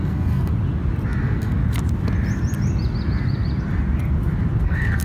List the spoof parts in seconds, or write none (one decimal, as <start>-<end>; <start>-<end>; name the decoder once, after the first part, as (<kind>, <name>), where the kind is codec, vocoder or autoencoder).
0.0-0.5 (codec, SNAC); 1.2-1.6; 4.6-5.0